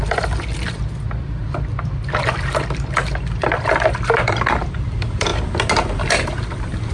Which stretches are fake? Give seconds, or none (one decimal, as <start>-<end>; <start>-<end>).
0.0-5.3; 6.1-6.9